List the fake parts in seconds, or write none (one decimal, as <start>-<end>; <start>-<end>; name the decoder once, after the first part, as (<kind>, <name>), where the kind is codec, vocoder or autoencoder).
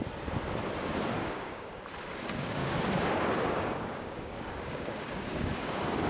1.2-1.8 (codec, DAC); 2.6-6.1